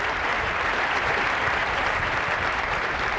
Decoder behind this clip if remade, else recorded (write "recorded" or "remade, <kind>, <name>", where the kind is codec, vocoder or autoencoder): remade, vocoder, BigVGAN v2